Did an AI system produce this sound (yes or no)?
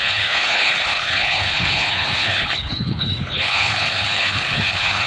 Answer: yes